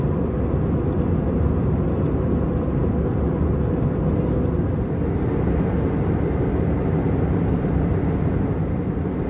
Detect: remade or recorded recorded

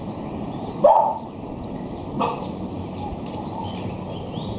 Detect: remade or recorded remade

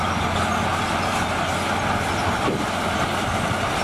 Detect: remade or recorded recorded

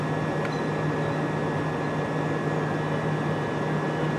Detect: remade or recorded recorded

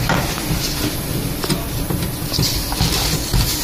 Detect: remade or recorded recorded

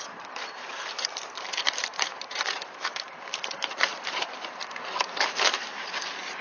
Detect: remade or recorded remade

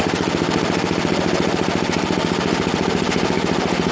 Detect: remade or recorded recorded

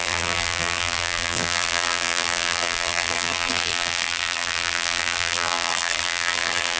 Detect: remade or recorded remade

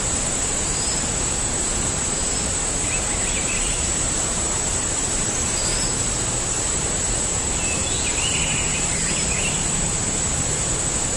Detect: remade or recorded remade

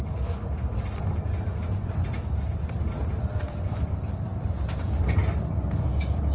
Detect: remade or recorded remade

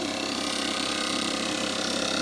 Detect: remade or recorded remade